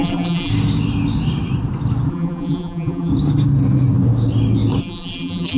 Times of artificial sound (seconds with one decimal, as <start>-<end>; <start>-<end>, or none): 0.0-0.5; 2.1-3.1; 4.8-5.6